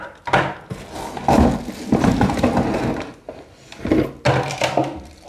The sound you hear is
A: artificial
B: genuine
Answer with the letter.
B